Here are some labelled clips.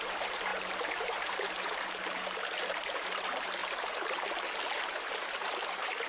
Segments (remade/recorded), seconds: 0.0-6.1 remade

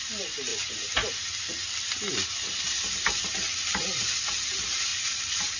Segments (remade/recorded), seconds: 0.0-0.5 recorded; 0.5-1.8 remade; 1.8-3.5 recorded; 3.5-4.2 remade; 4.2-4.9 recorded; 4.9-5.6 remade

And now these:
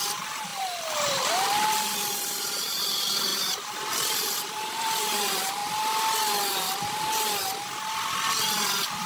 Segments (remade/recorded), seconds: 0.0-5.6 remade; 5.6-8.3 recorded; 8.3-9.1 remade

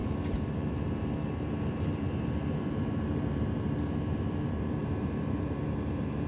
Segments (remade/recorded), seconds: 0.0-6.3 remade

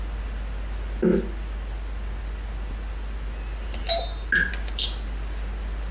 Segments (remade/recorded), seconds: 0.0-5.9 recorded